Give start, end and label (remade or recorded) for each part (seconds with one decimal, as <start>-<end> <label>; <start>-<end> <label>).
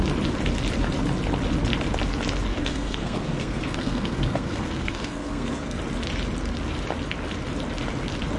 0.0-2.5 recorded; 2.5-5.8 remade; 5.8-8.4 recorded